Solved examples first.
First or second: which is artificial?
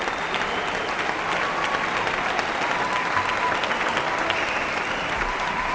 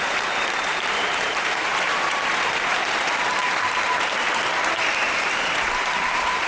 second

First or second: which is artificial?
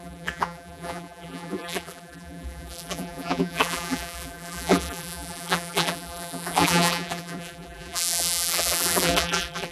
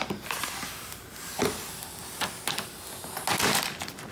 first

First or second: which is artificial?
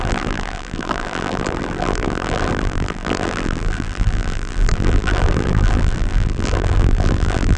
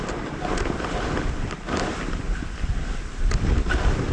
first